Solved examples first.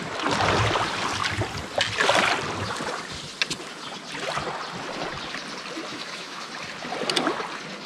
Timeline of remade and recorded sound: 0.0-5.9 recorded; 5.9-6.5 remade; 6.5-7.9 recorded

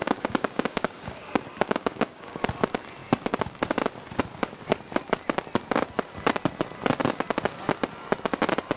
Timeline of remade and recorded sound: 0.0-2.4 remade; 2.4-8.8 recorded

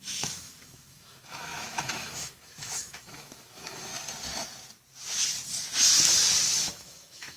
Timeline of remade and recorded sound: 0.0-3.9 remade; 3.9-6.5 recorded; 6.5-7.4 remade

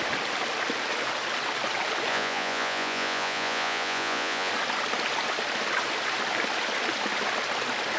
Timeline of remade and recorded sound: 0.0-2.1 recorded; 2.1-4.5 remade; 4.5-8.0 recorded

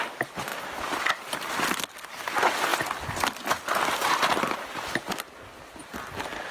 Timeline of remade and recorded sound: 0.0-6.5 recorded

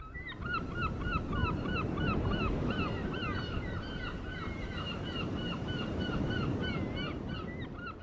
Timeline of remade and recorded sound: 0.0-1.4 recorded; 1.4-6.2 remade; 6.2-8.0 recorded

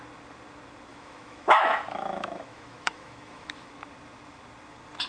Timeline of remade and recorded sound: 0.0-0.9 recorded; 0.9-3.7 remade; 3.7-5.1 recorded

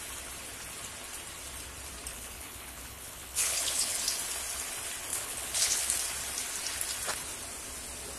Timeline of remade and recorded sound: 0.0-2.1 recorded; 2.1-4.0 remade; 4.0-5.1 recorded; 5.1-5.9 remade; 5.9-8.2 recorded